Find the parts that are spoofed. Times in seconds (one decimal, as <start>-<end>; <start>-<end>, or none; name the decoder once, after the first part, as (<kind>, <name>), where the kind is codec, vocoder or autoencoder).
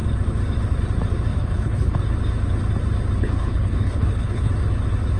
1.3-2.0 (codec, HILCodec); 3.2-4.5